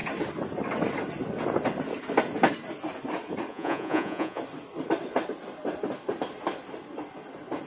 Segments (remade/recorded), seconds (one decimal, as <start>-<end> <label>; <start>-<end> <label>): 0.0-3.5 recorded; 3.5-4.4 remade; 4.4-7.7 recorded